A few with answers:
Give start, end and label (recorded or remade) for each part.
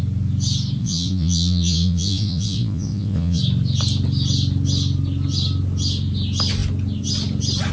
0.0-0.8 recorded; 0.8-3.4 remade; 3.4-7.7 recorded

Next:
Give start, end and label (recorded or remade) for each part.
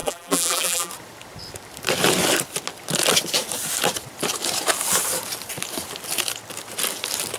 0.0-0.9 remade; 0.9-7.4 recorded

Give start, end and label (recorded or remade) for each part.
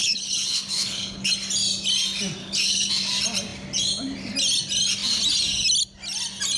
0.0-1.3 remade; 1.3-2.4 recorded; 2.4-2.9 remade; 2.9-6.6 recorded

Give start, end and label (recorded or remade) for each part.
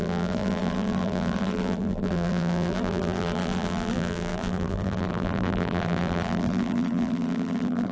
0.0-7.9 remade